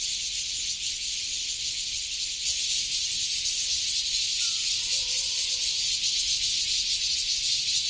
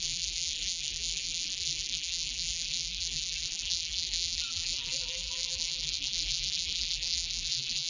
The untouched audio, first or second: first